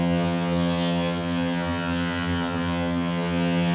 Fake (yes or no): yes